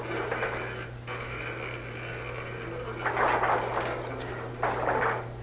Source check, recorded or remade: recorded